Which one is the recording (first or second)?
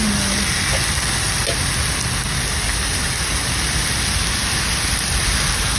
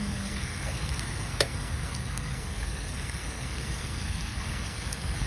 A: first